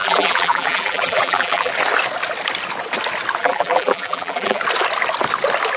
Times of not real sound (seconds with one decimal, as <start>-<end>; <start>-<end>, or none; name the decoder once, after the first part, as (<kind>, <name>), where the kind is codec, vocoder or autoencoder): 0.0-1.7 (vocoder, BigVGAN v2); 3.4-4.6